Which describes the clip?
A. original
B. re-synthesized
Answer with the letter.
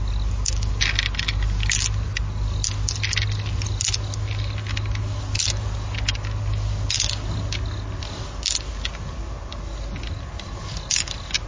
A